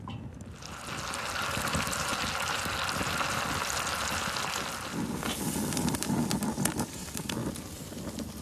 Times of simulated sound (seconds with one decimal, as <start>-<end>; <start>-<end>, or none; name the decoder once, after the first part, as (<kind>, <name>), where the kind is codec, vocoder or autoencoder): none